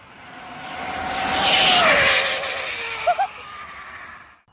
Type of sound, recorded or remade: recorded